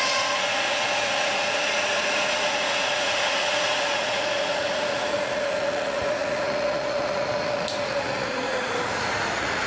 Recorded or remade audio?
remade